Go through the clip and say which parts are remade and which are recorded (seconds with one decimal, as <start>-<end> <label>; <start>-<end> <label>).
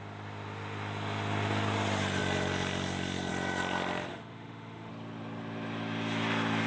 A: 0.0-4.1 recorded; 4.1-4.9 remade; 4.9-6.7 recorded